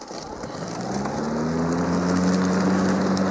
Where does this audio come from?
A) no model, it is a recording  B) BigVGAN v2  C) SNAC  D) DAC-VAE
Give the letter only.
A